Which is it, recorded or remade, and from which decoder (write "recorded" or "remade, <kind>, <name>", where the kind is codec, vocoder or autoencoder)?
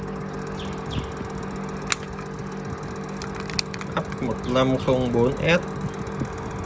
recorded